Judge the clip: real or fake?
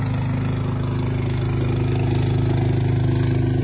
real